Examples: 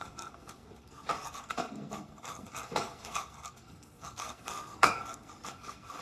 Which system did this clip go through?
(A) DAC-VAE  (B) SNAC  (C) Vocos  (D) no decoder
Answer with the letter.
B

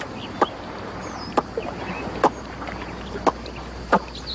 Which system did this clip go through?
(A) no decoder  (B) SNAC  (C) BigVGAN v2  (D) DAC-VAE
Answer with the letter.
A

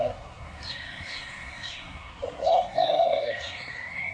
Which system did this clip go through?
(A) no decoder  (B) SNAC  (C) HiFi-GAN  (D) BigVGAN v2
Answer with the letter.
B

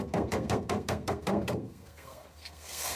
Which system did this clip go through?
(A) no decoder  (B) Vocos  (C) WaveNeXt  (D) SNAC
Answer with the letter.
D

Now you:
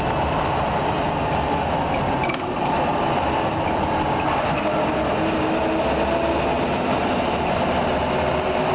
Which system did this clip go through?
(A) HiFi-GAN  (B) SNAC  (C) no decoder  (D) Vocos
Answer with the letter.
C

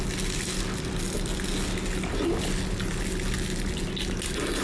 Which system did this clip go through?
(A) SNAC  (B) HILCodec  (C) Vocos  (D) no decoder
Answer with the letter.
D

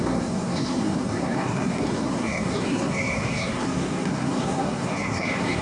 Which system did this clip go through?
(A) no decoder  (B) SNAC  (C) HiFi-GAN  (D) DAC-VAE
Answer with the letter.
B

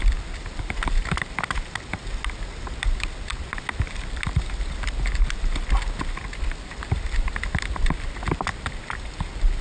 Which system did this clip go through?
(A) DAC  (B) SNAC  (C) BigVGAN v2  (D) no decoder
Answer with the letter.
D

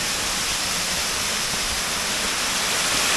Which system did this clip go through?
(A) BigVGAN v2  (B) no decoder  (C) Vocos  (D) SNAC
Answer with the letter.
B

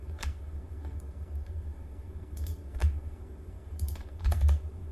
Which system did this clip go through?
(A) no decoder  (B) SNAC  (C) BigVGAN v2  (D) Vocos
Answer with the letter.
B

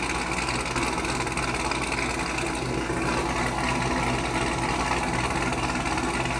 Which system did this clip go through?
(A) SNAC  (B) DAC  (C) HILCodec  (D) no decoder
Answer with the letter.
D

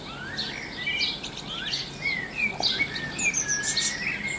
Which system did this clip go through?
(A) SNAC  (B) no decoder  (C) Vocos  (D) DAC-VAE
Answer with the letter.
B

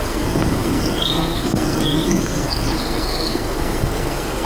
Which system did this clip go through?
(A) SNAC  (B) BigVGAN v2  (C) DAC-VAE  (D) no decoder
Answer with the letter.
A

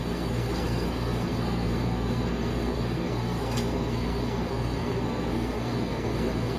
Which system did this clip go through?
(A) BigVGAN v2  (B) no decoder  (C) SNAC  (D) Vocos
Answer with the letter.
C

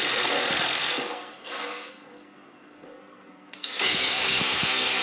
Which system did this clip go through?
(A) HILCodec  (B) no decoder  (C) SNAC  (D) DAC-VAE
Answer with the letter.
C